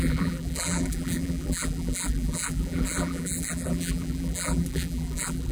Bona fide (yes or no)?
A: no